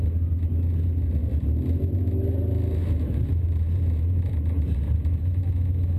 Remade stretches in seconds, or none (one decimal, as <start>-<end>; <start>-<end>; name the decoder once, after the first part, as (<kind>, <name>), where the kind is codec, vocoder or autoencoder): 2.8-5.2 (vocoder, BigVGAN v2)